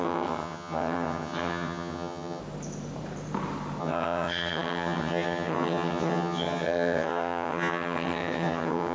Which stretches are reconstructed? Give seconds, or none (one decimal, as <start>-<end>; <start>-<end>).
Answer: 0.0-2.4; 3.8-8.9